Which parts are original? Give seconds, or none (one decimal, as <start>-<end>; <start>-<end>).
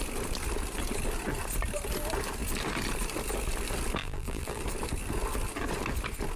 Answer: 0.0-4.0; 4.6-6.4